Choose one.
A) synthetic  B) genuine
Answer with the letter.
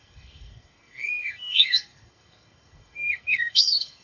A